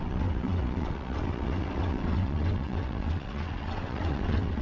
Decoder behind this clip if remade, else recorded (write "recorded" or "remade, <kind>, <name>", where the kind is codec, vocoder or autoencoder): remade, vocoder, WaveNeXt